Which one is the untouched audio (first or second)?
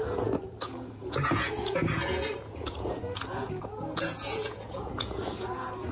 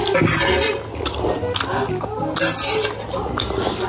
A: second